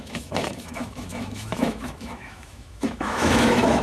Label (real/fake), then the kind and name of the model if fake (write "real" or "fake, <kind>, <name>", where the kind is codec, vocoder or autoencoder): fake, autoencoder, DAC-VAE